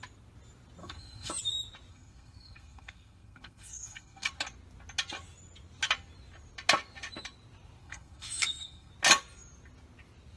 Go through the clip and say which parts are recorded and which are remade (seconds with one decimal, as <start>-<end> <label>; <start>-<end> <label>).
0.0-0.8 recorded; 0.8-1.3 remade; 1.3-1.9 recorded; 1.9-4.3 remade; 4.3-7.8 recorded; 7.8-8.9 remade; 8.9-10.4 recorded